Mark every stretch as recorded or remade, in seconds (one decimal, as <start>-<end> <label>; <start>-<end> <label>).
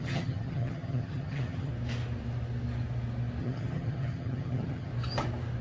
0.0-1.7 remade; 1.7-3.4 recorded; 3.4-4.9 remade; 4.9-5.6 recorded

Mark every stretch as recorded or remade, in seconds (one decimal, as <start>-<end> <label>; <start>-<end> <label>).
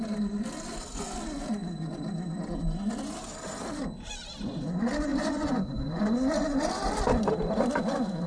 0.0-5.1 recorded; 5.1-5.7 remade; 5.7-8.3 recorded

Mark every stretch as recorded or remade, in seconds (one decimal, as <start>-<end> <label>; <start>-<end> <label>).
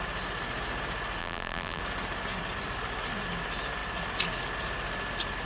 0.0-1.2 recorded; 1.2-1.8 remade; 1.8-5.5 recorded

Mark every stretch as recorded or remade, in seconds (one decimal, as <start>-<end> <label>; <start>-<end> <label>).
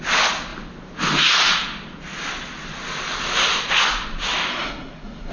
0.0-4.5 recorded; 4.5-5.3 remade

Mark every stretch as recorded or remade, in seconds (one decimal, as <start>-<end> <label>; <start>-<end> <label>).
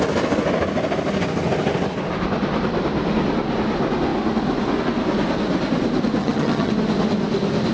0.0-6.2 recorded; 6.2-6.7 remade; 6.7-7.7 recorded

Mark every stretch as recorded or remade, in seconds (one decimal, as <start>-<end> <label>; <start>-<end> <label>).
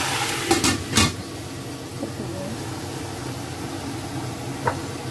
0.0-5.1 recorded